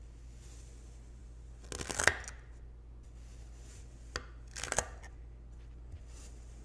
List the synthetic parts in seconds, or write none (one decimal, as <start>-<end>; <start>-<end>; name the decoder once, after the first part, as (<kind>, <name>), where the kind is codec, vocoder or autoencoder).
none